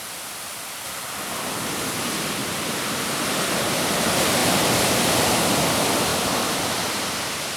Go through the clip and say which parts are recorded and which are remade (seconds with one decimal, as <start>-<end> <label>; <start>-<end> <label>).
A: 0.0-2.4 remade; 2.4-3.4 recorded; 3.4-4.4 remade; 4.4-5.4 recorded; 5.4-6.1 remade; 6.1-7.0 recorded; 7.0-7.6 remade